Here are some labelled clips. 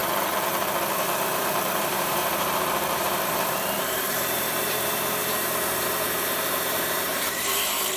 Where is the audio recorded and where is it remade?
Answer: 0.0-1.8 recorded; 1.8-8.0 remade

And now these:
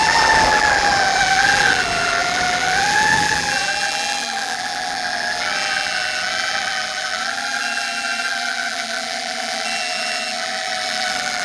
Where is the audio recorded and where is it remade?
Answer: 0.0-11.4 remade

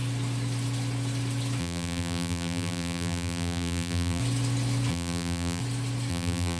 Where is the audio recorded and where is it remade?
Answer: 0.0-1.6 recorded; 1.6-4.2 remade; 4.2-4.9 recorded; 4.9-5.6 remade; 5.6-6.1 recorded; 6.1-6.6 remade

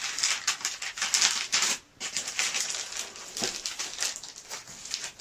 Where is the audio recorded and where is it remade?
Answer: 0.0-1.5 recorded; 1.5-2.9 remade; 2.9-5.2 recorded